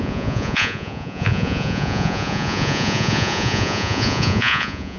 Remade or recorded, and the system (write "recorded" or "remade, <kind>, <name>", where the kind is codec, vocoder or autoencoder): remade, vocoder, Vocos